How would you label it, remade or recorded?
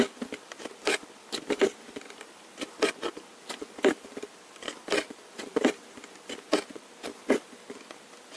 remade